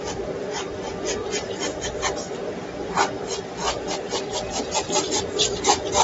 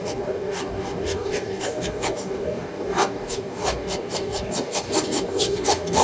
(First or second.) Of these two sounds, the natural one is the first